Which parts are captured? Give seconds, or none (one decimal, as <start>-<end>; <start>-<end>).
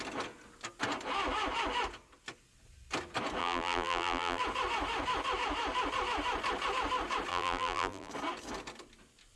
0.0-3.4; 4.4-7.3; 8.1-9.4